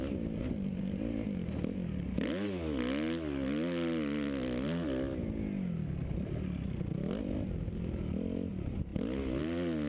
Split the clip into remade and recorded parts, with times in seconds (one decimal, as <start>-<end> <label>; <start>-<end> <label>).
0.0-9.9 recorded